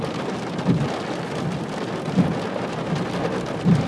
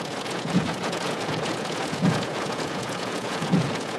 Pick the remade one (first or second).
second